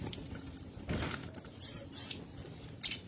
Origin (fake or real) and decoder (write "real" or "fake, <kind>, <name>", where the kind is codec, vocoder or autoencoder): real